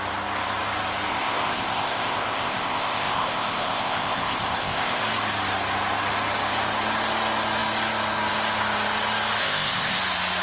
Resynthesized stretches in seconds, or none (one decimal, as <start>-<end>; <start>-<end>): 1.1-5.0; 9.4-10.0